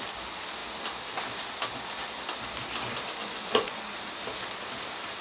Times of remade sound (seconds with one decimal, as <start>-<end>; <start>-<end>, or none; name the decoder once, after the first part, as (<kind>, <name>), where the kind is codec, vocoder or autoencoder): 3.2-3.8 (vocoder, Vocos)